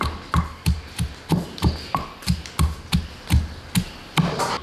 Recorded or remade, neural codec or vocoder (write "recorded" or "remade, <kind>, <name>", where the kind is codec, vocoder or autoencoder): recorded